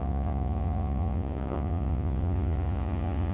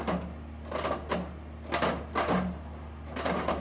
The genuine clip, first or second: second